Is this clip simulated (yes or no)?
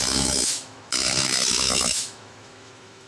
yes